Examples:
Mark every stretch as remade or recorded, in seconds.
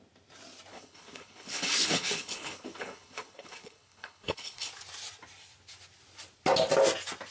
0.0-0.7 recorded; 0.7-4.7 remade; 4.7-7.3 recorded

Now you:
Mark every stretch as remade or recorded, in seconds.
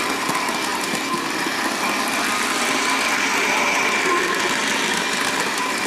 0.0-5.9 recorded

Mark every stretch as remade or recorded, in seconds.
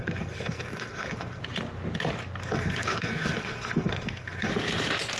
0.0-1.4 remade; 1.4-2.4 recorded; 2.4-4.5 remade; 4.5-5.2 recorded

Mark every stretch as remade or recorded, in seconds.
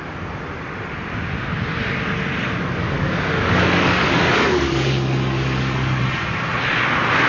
0.0-2.8 recorded; 2.8-6.0 remade; 6.0-7.3 recorded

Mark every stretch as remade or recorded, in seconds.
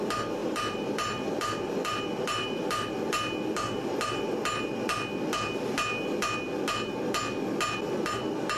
0.0-0.4 recorded; 0.4-2.9 remade; 2.9-8.6 recorded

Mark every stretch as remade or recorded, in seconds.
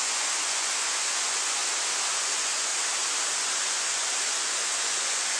0.0-1.6 remade; 1.6-2.1 recorded; 2.1-2.7 remade; 2.7-3.7 recorded; 3.7-5.4 remade